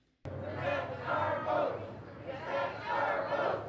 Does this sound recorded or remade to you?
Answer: recorded